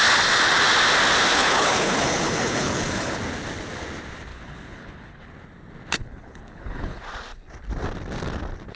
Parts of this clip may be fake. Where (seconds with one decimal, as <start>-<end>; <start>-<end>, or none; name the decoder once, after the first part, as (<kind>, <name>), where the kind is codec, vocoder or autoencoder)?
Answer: 1.3-3.2 (codec, HILCodec); 4.3-5.3; 6.0-7.0